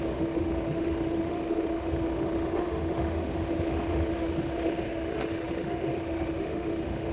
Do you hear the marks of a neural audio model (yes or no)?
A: yes